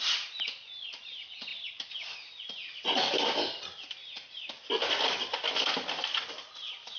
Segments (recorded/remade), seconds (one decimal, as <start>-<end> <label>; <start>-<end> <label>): 0.0-1.5 recorded; 1.5-5.7 remade; 5.7-7.0 recorded